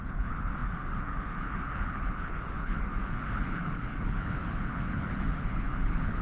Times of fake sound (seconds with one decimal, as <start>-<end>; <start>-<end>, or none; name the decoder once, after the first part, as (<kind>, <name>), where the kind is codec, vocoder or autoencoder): 0.0-6.2 (codec, HILCodec)